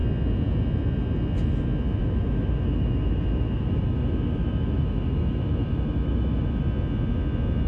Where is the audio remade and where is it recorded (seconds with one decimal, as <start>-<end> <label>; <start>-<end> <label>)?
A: 0.0-2.0 recorded; 2.0-6.6 remade; 6.6-7.7 recorded